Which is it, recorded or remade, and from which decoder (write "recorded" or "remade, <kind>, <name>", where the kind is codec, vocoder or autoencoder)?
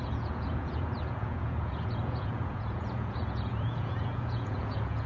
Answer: remade, vocoder, Vocos